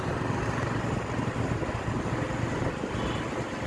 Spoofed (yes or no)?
no